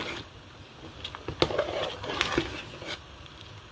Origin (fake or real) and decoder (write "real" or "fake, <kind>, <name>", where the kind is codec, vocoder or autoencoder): fake, vocoder, BigVGAN v2